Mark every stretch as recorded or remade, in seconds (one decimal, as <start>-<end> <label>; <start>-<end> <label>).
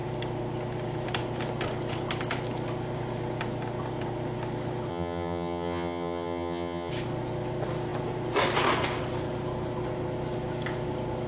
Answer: 0.0-4.9 recorded; 4.9-6.9 remade; 6.9-11.3 recorded